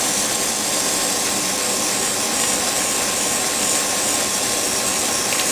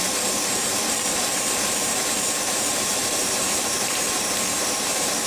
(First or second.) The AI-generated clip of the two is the second